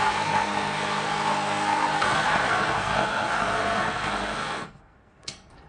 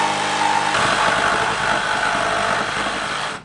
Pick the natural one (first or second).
second